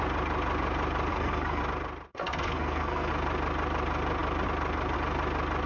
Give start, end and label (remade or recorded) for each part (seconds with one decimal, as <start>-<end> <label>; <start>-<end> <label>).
0.0-1.1 recorded; 1.1-1.6 remade; 1.6-2.1 recorded; 2.1-3.1 remade; 3.1-5.7 recorded